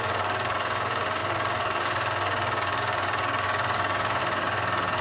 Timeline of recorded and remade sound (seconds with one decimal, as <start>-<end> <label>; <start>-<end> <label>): 0.0-5.0 remade